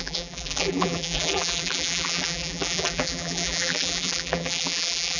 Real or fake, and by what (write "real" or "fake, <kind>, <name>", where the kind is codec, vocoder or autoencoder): fake, vocoder, BigVGAN v2